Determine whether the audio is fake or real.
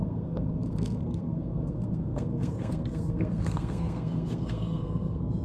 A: fake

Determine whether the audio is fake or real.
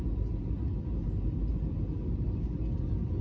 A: real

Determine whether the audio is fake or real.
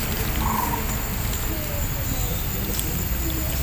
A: real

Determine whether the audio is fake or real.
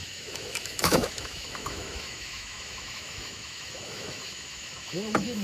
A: fake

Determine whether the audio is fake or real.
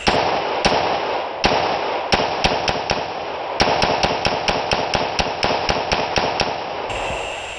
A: real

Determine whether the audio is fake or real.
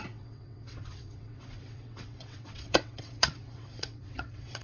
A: fake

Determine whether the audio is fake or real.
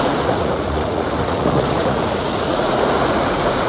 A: fake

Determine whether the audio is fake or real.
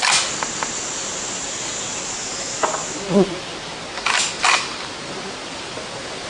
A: real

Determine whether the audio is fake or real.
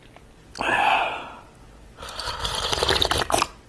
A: real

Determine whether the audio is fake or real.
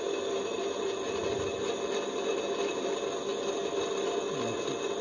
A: real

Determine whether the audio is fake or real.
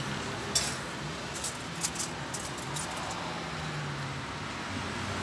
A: real